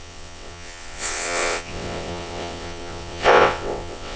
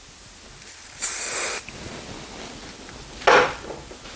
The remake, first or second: first